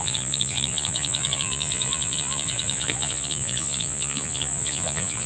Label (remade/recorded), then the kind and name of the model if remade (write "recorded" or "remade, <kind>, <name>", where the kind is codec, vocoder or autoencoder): remade, vocoder, Vocos